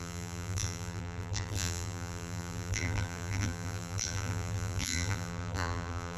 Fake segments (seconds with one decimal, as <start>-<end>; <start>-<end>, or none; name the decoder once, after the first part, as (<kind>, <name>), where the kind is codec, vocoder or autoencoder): 0.0-6.2 (vocoder, BigVGAN v2)